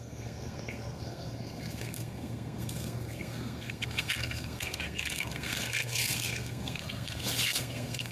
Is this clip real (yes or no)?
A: no